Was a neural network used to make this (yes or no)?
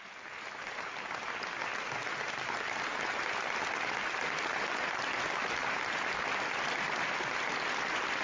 no